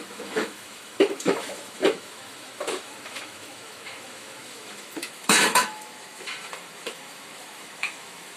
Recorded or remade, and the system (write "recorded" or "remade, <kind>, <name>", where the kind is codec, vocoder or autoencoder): remade, autoencoder, DAC-VAE